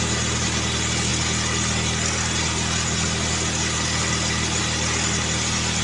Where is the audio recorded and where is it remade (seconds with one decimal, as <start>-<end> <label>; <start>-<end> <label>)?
0.0-5.8 recorded